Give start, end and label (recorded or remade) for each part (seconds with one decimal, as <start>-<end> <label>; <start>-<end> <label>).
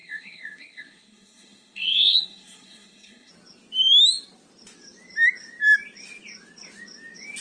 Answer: 0.0-3.3 remade; 3.3-7.4 recorded